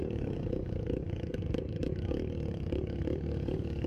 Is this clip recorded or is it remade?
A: remade